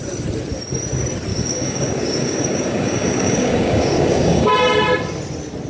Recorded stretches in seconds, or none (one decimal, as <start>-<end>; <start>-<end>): 0.0-1.3; 4.5-5.7